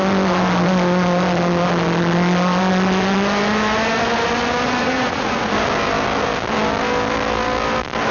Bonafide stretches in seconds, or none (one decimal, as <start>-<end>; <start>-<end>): 0.0-4.8; 5.5-8.1